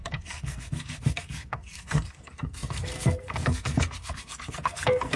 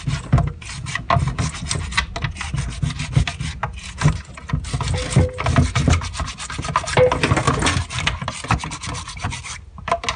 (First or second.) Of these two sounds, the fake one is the first